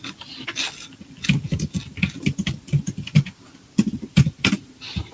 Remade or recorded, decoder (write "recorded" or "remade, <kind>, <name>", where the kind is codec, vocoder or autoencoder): recorded